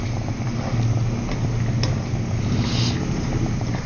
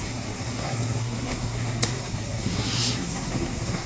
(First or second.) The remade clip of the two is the second